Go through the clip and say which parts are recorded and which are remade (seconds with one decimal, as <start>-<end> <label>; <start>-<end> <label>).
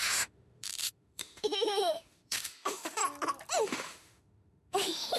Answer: 0.0-3.0 remade; 3.0-3.6 recorded; 3.6-5.2 remade